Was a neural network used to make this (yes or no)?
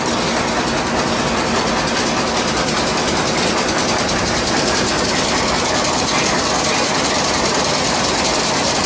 no